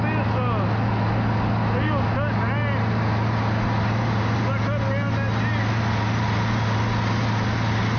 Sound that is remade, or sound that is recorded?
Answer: recorded